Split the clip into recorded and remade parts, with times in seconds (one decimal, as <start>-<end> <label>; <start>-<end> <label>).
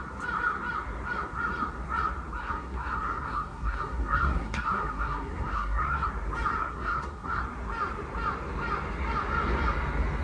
0.0-2.4 recorded; 2.4-6.1 remade; 6.1-6.6 recorded; 6.6-7.4 remade; 7.4-10.2 recorded